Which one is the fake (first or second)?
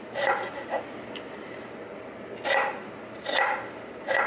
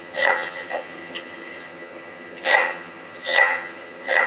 second